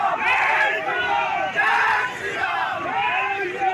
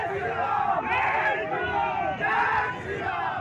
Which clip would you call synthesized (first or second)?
first